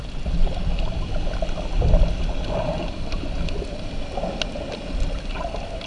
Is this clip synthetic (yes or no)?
no